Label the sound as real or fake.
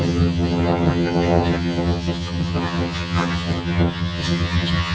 fake